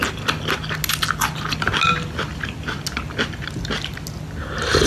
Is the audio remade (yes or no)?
no